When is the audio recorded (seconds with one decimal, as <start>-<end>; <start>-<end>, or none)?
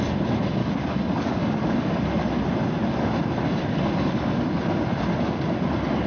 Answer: 0.0-0.6; 1.4-6.1